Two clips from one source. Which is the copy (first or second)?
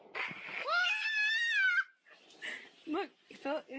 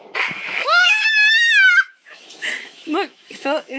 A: second